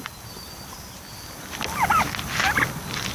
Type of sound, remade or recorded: recorded